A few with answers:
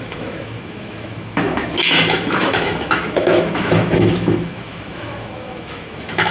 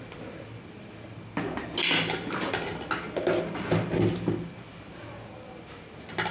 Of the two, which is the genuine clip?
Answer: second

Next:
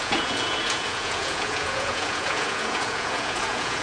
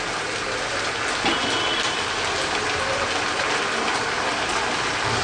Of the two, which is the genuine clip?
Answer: second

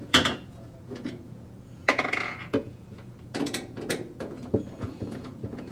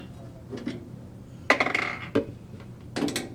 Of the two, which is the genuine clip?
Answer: second